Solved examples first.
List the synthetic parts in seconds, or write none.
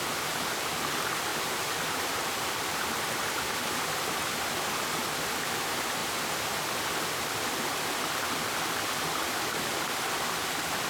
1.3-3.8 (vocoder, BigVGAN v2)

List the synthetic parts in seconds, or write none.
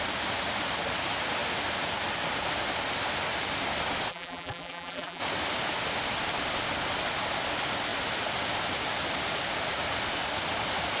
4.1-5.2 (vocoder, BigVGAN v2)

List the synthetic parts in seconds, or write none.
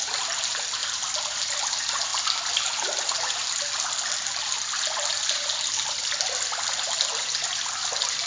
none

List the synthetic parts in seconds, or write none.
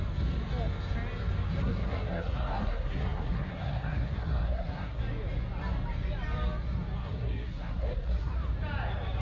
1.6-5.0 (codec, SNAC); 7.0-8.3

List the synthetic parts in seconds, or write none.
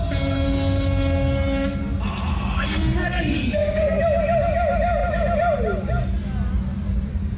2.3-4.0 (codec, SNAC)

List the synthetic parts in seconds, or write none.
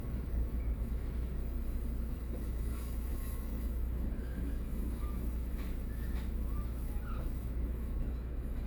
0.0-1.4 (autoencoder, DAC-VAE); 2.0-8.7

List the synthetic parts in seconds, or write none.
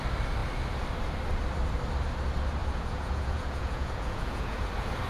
2.6-4.6 (vocoder, Vocos)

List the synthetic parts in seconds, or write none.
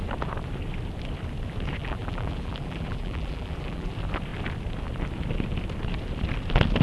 1.8-3.9 (vocoder, BigVGAN v2)